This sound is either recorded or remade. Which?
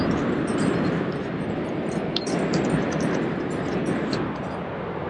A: recorded